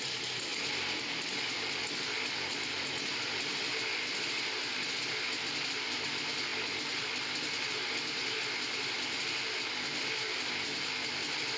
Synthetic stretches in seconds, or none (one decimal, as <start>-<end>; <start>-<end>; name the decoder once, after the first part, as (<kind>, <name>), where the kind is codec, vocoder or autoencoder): none